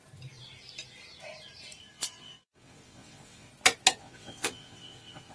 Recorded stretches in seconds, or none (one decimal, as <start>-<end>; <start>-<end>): 0.0-1.9; 3.5-4.0